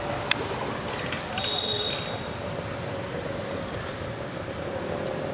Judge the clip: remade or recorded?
recorded